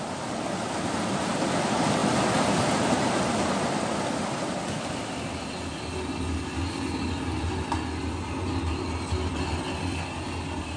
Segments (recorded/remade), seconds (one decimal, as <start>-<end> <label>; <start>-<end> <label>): 0.0-10.8 recorded